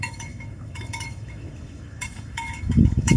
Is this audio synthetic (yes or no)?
yes